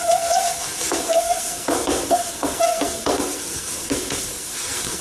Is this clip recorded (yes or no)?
no